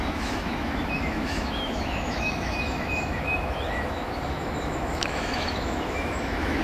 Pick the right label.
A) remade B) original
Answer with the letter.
A